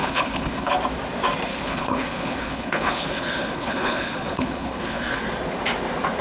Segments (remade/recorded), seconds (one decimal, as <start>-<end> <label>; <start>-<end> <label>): 0.0-0.7 remade; 0.7-1.5 recorded; 1.5-5.2 remade; 5.2-6.2 recorded